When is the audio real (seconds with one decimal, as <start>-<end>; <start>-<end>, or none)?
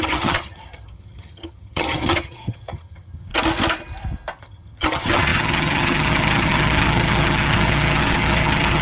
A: 3.3-4.4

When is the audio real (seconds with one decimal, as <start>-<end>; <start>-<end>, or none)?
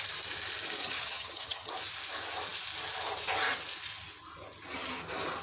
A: 0.0-0.8; 1.7-5.4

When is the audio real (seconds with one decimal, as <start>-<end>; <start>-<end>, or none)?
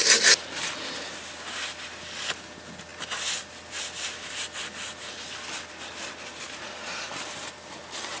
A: 0.0-8.2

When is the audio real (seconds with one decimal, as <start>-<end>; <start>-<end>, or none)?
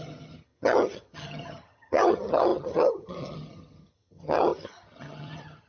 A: none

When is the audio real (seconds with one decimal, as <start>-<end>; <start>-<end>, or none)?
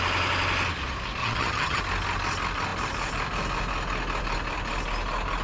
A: 0.0-1.2; 1.8-5.4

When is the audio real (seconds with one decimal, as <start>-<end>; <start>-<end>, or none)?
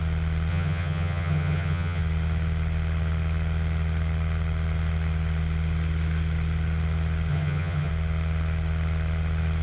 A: 0.0-0.5; 2.0-7.3; 7.9-9.6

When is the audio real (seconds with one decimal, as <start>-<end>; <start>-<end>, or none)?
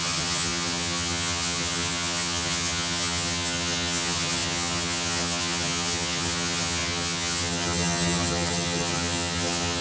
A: none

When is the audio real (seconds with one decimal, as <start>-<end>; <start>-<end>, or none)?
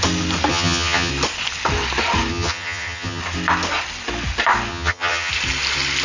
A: 0.0-0.5; 1.1-2.3; 3.2-4.7; 5.3-6.0